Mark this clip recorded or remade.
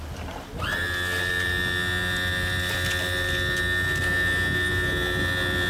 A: recorded